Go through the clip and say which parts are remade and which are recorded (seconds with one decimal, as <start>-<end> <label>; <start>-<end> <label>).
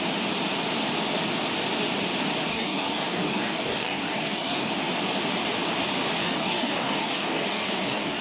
0.0-2.5 recorded; 2.5-4.7 remade; 4.7-6.2 recorded; 6.2-8.2 remade